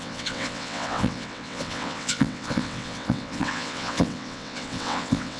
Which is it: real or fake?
fake